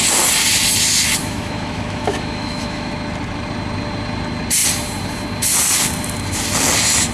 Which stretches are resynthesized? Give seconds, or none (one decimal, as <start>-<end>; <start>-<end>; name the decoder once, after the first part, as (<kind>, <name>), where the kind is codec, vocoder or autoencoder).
1.2-2.9 (autoencoder, DAC-VAE)